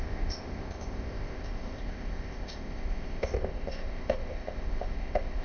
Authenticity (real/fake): fake